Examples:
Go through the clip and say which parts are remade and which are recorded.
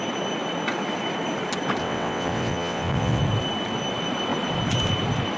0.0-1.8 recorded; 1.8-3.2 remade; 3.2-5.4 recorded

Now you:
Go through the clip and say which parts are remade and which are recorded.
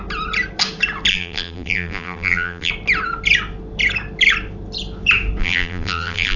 0.0-1.1 recorded; 1.1-2.7 remade; 2.7-5.4 recorded; 5.4-6.4 remade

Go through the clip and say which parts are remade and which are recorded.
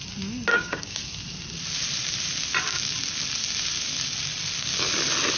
0.0-0.5 recorded; 0.5-1.0 remade; 1.0-5.4 recorded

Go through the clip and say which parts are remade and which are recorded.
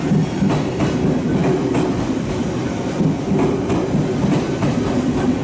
0.0-5.4 recorded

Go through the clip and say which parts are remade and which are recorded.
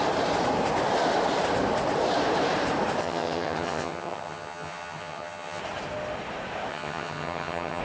0.0-3.0 recorded; 3.0-5.6 remade; 5.6-6.7 recorded; 6.7-7.8 remade